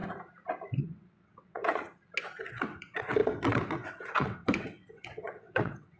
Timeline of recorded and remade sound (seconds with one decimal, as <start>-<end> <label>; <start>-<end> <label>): 0.0-0.8 recorded; 0.8-1.7 remade; 1.7-2.4 recorded; 2.4-6.0 remade

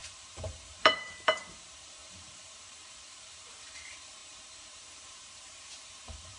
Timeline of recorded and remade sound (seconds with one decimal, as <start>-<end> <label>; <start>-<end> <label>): 0.0-6.4 remade

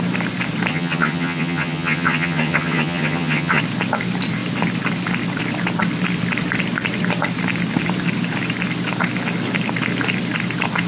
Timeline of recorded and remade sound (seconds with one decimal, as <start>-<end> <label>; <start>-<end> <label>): 0.0-0.7 recorded; 0.7-3.6 remade; 3.6-10.9 recorded

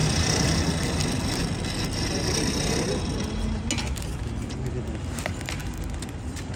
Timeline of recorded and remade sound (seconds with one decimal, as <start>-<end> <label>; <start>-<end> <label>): 0.0-6.6 recorded

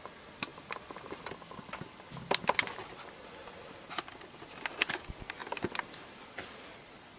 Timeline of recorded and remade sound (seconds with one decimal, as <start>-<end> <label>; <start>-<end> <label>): 0.0-7.2 recorded

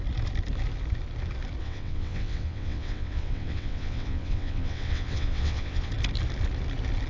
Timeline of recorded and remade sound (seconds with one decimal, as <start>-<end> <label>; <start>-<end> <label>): 0.0-1.6 recorded; 1.6-5.9 remade; 5.9-7.1 recorded

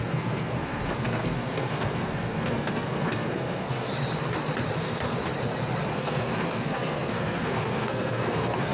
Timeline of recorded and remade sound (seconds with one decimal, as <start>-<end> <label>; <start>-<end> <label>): 0.0-3.9 remade; 3.9-4.8 recorded; 4.8-5.2 remade; 5.2-5.9 recorded; 5.9-8.7 remade

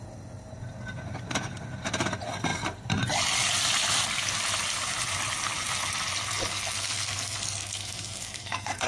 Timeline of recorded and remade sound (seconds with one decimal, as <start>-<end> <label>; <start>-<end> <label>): 0.0-6.5 recorded; 6.5-8.9 remade